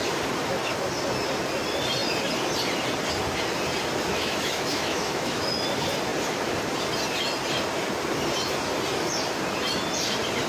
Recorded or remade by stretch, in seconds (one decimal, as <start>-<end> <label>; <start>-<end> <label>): 0.0-4.1 recorded; 4.1-5.5 remade; 5.5-10.5 recorded